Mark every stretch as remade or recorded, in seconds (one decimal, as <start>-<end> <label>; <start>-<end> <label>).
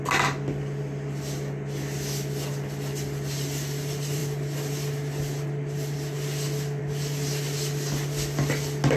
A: 0.0-9.0 recorded